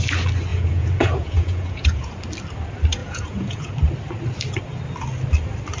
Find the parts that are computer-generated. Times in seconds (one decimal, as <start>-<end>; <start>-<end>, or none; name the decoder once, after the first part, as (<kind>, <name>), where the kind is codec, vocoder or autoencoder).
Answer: 0.5-2.1 (vocoder, Vocos); 3.0-3.7